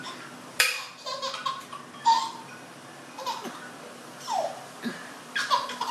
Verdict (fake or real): fake